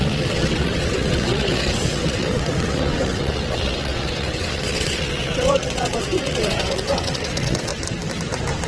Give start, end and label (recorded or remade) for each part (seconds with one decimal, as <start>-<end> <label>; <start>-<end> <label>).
0.0-7.7 remade; 7.7-8.7 recorded